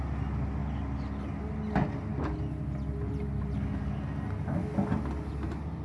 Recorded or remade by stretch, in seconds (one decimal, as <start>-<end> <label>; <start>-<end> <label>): 0.0-5.8 recorded